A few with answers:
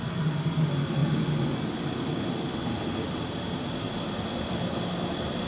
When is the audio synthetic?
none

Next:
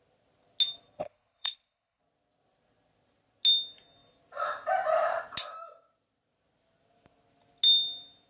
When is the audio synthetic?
1.0-2.0 (codec, HILCodec)

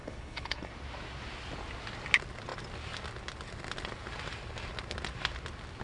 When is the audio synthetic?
0.0-0.7 (codec, HILCodec)

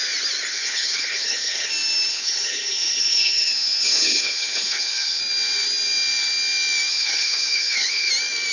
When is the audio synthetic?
0.5-1.7 (codec, HILCodec); 2.1-5.2; 6.9-8.1

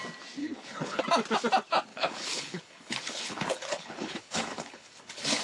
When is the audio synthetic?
0.4-1.0 (codec, HILCodec); 1.9-5.4

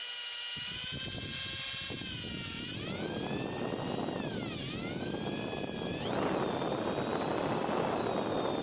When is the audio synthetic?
none

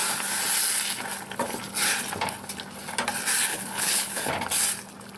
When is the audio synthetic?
3.5-4.3 (codec, HILCodec)